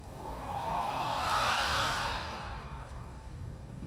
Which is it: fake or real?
fake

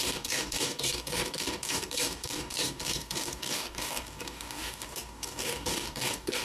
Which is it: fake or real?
fake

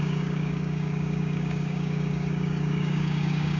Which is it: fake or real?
fake